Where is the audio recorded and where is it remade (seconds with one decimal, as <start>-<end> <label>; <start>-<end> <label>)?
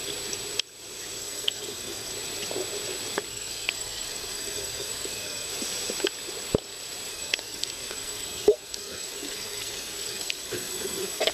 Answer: 0.0-1.2 recorded; 1.2-2.1 remade; 2.1-3.3 recorded; 3.3-5.5 remade; 5.5-7.1 recorded; 7.1-11.3 remade